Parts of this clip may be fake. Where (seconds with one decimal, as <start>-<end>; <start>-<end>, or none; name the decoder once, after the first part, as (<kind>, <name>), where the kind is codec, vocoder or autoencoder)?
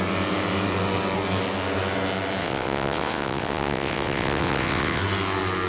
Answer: 2.4-5.0 (vocoder, WaveNeXt)